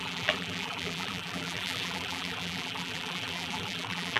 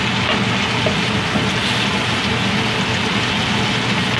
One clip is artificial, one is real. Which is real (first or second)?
second